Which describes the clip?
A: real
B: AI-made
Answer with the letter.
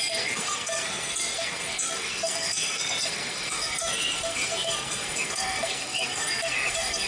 B